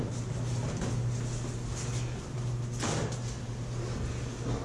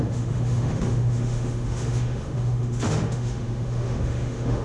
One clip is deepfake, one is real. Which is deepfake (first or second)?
second